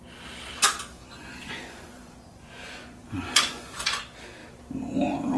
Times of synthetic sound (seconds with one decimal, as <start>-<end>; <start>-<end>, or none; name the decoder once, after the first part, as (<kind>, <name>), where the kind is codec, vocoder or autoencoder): 1.0-4.0 (vocoder, Vocos)